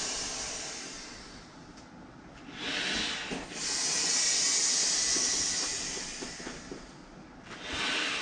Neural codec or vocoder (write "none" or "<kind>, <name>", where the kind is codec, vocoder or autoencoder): none